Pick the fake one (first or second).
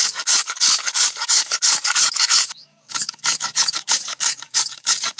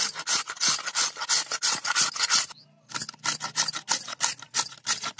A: first